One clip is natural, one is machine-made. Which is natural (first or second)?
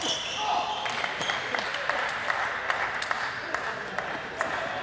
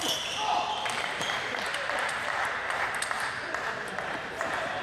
first